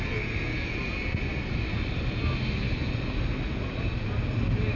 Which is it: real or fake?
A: real